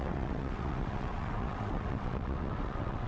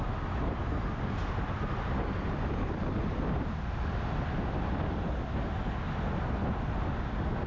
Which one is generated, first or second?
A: first